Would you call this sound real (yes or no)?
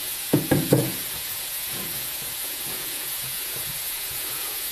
no